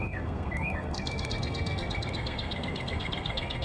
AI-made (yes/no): yes